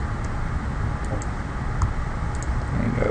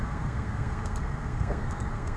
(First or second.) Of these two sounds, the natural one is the first